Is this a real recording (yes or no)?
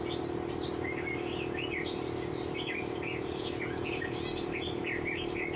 yes